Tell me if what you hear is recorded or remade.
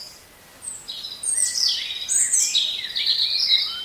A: recorded